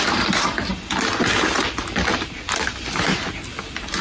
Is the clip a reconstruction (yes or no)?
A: no